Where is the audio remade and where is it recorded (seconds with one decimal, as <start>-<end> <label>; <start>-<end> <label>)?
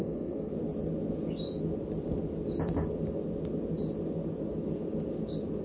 0.0-0.5 remade; 0.5-5.6 recorded